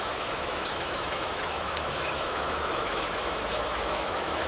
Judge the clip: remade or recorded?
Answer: remade